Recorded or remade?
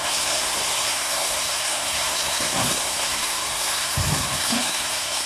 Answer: remade